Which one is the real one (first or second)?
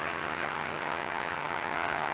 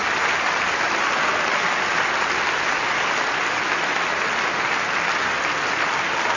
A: second